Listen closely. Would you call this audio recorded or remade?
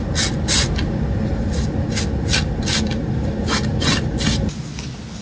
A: recorded